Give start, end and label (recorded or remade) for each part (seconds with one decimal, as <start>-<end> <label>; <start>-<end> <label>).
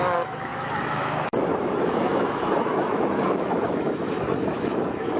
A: 0.0-5.2 remade